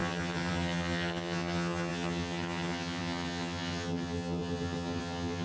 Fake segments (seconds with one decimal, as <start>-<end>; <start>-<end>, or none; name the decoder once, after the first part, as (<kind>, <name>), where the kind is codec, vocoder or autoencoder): 0.0-5.4 (vocoder, HiFi-GAN)